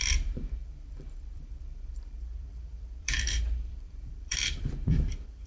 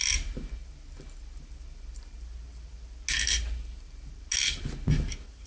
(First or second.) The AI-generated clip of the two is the first